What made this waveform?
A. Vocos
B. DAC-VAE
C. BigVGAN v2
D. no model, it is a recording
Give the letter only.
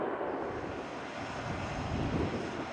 D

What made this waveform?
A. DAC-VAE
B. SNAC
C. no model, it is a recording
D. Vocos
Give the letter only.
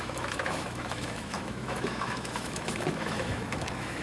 A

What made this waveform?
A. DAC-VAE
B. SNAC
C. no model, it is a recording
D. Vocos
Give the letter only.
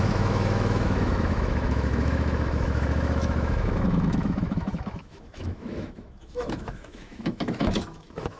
A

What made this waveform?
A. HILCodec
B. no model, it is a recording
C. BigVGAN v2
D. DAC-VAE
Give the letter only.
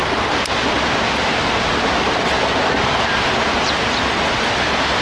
B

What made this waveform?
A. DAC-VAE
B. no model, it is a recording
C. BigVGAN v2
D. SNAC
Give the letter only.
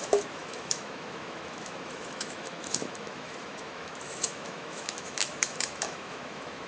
A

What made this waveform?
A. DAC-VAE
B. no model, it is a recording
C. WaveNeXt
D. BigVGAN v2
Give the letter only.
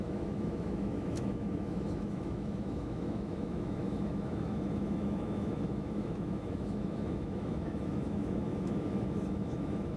A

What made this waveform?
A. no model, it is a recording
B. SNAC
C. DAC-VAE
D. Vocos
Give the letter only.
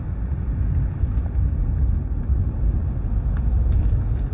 A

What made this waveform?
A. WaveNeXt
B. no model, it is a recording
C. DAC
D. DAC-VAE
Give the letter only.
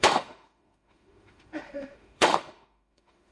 D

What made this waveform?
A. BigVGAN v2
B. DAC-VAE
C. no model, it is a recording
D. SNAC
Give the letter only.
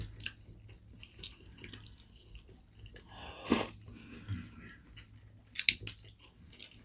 C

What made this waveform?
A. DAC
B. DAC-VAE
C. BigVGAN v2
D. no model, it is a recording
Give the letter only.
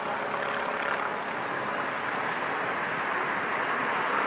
D